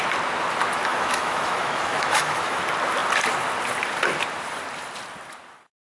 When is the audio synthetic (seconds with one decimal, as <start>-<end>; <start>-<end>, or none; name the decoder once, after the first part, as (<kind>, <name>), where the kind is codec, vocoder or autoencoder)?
0.9-2.6 (autoencoder, DAC-VAE)